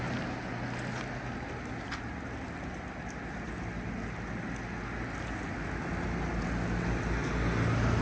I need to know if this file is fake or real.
real